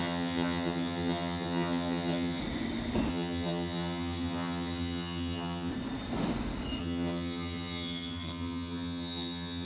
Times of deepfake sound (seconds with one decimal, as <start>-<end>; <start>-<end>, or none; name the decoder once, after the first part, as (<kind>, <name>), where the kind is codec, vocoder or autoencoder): 0.0-2.4 (vocoder, HiFi-GAN); 3.1-5.7; 6.8-9.7